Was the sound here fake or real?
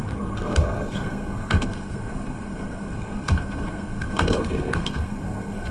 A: fake